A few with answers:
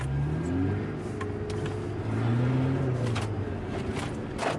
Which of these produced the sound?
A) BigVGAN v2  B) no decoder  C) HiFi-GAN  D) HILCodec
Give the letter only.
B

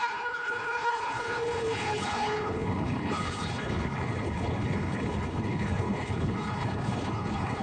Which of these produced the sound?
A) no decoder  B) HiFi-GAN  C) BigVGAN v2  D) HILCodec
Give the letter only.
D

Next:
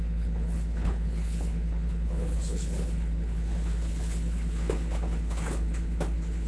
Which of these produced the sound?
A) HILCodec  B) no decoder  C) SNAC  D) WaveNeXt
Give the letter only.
A